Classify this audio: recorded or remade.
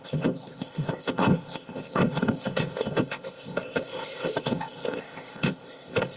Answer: remade